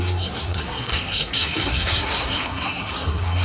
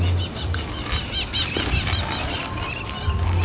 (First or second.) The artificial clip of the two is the first